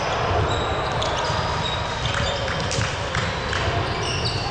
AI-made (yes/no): no